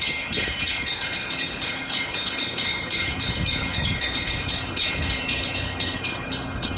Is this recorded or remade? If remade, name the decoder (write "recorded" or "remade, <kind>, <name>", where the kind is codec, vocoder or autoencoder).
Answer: remade, codec, HILCodec